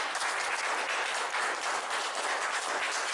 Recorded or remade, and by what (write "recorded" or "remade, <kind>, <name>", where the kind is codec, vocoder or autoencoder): recorded